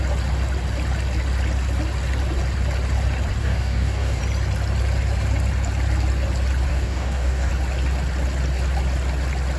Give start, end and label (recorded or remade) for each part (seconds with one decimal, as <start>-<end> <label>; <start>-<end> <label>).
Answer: 0.0-3.4 recorded; 3.4-4.2 remade; 4.2-6.7 recorded; 6.7-7.5 remade; 7.5-9.6 recorded

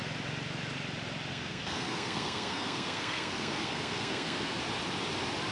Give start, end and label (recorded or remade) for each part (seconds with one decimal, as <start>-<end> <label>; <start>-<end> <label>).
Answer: 0.0-1.3 recorded; 1.3-4.6 remade; 4.6-5.5 recorded

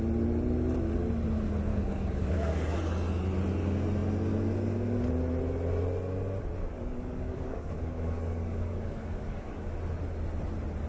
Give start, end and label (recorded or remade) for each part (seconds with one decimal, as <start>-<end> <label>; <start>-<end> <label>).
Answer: 0.0-1.7 recorded; 1.7-2.8 remade; 2.8-6.6 recorded; 6.6-9.7 remade; 9.7-10.9 recorded

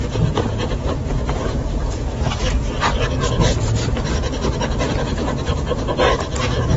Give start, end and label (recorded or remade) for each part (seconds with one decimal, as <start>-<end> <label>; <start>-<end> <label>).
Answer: 0.0-6.8 recorded